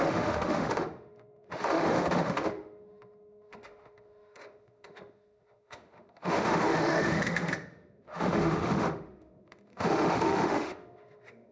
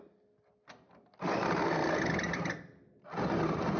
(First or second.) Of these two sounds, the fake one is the first